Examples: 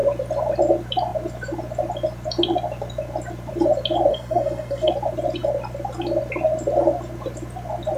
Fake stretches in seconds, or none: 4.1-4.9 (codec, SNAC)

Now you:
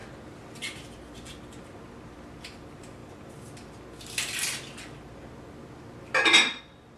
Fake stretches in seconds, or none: none